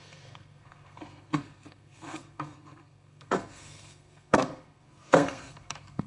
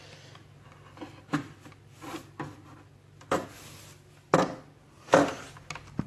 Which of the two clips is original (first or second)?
second